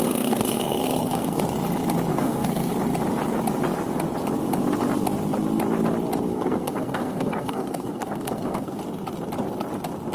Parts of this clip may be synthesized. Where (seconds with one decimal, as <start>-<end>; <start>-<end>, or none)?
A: 0.0-1.4; 2.1-2.7; 6.3-8.8